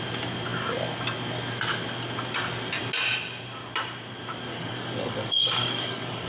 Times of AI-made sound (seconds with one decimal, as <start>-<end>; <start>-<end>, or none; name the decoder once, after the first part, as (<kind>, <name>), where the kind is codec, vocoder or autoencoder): 4.5-6.3 (codec, DAC)